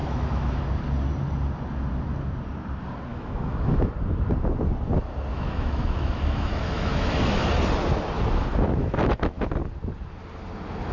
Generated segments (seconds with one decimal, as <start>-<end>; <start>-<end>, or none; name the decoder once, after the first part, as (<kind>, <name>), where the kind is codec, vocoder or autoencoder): 0.0-0.6 (autoencoder, DAC-VAE); 3.1-3.9; 5.3-7.1; 8.8-9.5